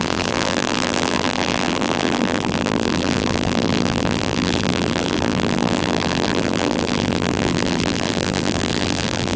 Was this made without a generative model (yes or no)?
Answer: no